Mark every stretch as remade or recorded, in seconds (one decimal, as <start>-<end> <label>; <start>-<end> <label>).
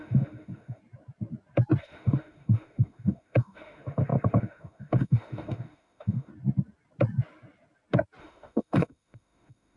0.0-0.8 remade; 0.8-1.8 recorded; 1.8-6.3 remade; 6.3-8.2 recorded; 8.2-9.8 remade